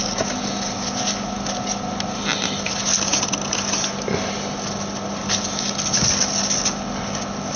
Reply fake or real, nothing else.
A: real